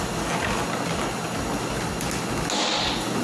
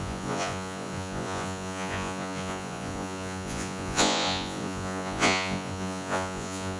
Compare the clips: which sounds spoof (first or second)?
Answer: second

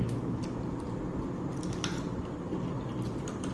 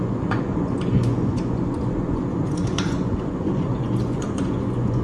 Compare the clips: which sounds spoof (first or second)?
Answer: second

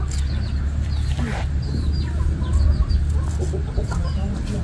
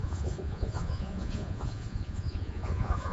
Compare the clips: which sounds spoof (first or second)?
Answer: second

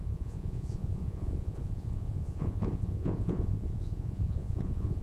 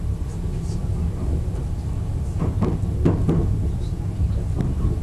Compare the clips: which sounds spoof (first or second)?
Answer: first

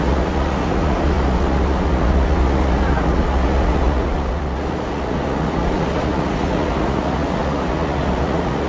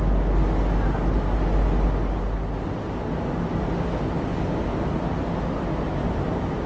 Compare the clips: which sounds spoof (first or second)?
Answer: first